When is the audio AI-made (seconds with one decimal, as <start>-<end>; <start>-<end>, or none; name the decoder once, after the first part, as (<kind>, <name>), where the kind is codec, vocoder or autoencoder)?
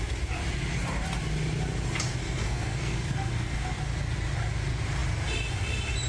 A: 2.2-3.8 (codec, SNAC)